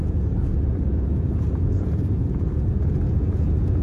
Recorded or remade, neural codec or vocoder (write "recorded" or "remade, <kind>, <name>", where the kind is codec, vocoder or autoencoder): remade, vocoder, Vocos